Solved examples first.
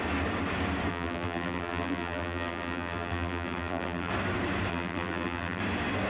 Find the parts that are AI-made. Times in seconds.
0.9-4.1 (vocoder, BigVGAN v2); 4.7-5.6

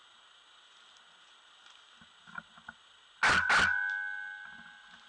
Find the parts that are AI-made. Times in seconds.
none